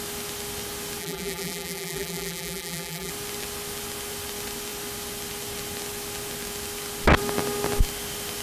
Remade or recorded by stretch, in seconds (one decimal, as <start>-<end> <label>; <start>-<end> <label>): 0.0-1.0 recorded; 1.0-3.1 remade; 3.1-8.4 recorded